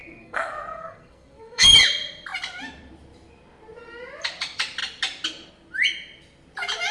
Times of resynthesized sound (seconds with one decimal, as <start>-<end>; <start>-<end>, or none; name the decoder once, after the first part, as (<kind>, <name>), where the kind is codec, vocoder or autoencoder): 0.0-1.7 (codec, SNAC)